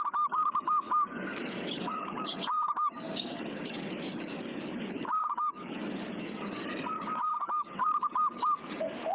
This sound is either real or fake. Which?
fake